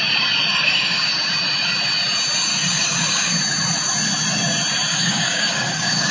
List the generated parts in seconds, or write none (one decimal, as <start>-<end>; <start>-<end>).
0.5-1.1; 2.5-3.3; 4.9-6.1